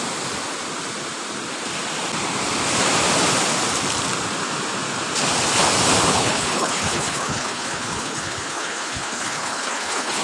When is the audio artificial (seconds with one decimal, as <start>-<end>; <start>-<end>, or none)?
6.1-10.2